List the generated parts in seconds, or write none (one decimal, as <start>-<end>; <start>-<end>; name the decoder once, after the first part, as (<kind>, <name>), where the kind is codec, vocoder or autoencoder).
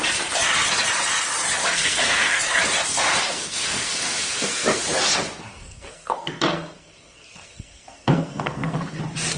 1.6-2.4 (codec, SNAC); 3.3-4.8; 5.5-9.0